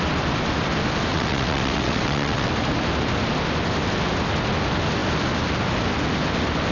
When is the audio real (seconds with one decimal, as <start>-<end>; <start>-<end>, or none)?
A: 0.0-1.1; 2.5-6.7